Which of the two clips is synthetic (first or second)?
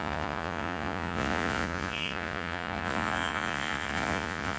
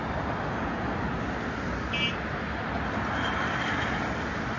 first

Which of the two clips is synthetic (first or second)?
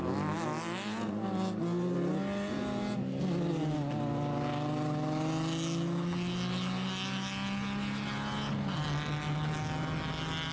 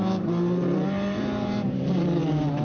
second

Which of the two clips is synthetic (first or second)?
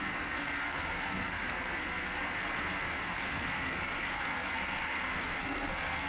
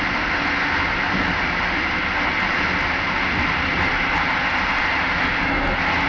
first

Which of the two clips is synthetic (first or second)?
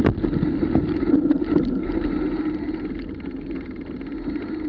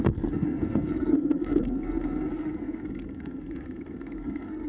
second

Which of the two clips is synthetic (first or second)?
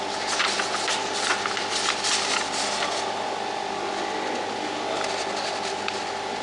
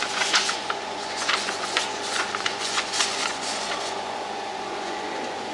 second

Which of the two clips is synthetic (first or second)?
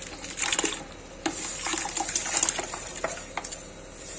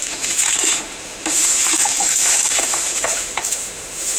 second